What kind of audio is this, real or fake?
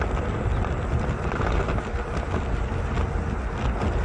real